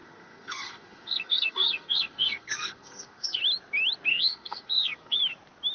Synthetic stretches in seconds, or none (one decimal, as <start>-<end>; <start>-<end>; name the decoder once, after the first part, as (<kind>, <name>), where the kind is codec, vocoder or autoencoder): 0.0-3.4 (codec, SNAC); 4.1-5.2